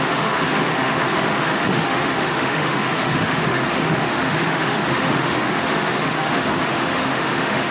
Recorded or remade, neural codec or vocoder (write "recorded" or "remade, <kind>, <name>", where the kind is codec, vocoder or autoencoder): remade, autoencoder, DAC-VAE